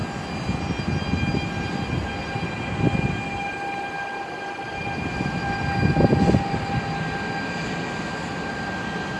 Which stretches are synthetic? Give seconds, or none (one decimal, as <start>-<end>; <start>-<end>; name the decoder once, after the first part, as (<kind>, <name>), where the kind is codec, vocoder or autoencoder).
none